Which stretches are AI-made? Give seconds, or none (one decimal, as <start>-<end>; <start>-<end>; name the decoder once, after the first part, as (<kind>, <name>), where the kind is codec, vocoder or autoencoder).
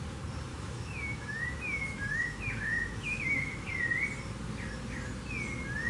0.5-3.7 (autoencoder, DAC-VAE)